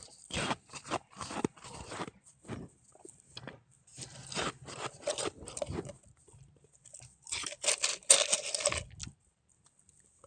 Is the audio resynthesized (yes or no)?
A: no